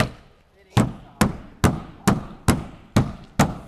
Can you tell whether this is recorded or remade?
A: recorded